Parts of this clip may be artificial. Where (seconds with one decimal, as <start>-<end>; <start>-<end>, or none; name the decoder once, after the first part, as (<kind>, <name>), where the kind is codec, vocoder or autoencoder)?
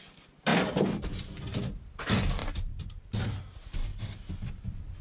2.4-3.0 (vocoder, BigVGAN v2)